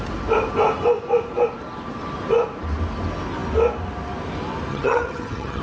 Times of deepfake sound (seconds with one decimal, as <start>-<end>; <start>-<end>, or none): 4.7-5.6